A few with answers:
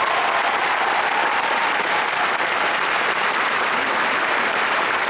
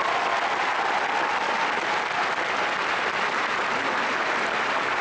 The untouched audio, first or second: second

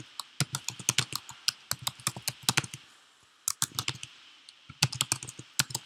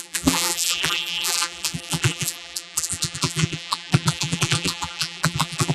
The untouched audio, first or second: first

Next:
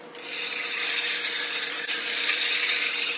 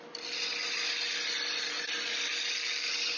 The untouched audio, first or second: second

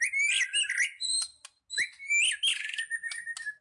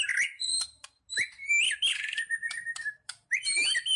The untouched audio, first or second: first